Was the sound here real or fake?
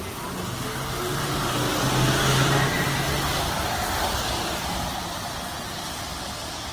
real